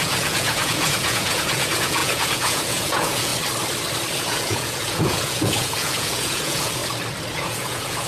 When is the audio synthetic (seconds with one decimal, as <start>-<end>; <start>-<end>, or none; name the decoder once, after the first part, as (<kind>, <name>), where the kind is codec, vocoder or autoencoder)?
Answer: 0.0-3.3 (vocoder, Vocos); 4.2-6.8; 7.4-8.1